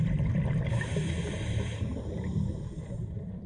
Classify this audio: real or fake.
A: fake